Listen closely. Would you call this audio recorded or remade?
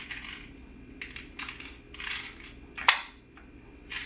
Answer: recorded